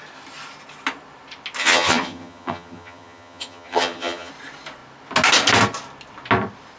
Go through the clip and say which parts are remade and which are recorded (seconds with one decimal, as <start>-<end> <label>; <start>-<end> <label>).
0.0-1.6 recorded; 1.6-4.3 remade; 4.3-6.8 recorded